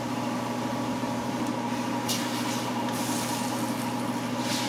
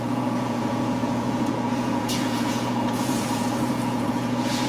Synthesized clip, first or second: second